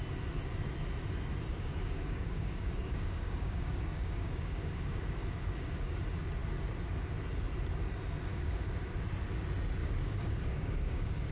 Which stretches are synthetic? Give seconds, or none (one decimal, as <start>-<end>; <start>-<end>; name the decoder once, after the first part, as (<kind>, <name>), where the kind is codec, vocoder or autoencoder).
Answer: 1.5-6.0 (codec, DAC); 8.3-8.8; 9.8-11.3